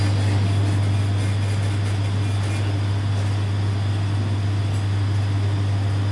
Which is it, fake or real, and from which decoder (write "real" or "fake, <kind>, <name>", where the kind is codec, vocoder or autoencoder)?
real